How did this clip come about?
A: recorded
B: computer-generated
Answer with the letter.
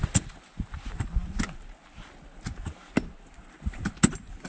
A